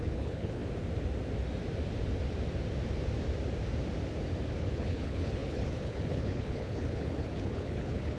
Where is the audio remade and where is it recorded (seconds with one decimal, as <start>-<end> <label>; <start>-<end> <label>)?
0.0-0.6 remade; 0.6-4.6 recorded; 4.6-8.2 remade